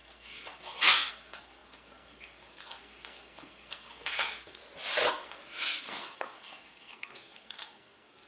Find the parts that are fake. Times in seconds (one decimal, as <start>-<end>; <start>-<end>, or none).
0.0-4.6; 5.1-8.3